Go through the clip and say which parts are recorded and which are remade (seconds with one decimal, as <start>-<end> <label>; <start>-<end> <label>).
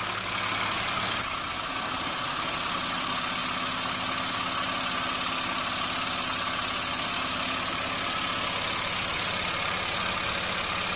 0.0-11.0 recorded